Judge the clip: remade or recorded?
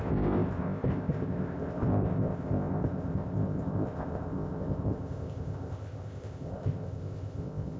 remade